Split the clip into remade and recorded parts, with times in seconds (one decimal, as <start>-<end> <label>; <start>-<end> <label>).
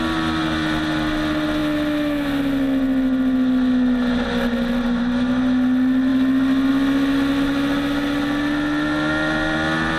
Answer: 0.0-10.0 recorded